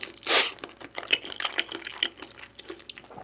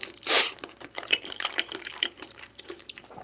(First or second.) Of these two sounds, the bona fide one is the first